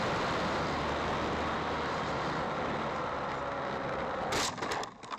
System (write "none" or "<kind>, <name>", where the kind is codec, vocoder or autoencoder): none